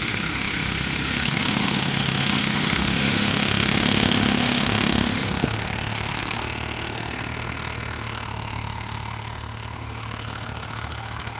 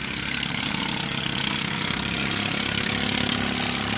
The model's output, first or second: first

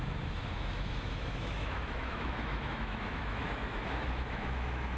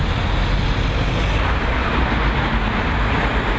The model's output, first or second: first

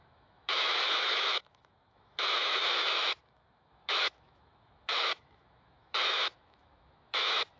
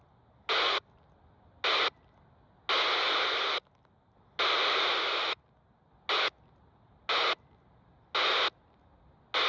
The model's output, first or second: first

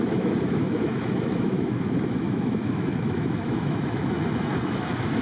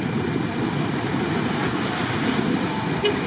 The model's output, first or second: first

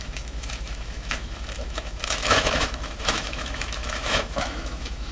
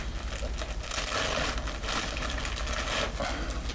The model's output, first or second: first